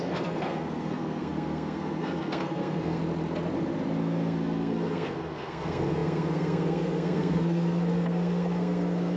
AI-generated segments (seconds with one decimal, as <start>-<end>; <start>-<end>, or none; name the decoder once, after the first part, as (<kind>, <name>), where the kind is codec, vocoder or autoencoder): 0.0-3.0 (codec, SNAC); 4.0-9.2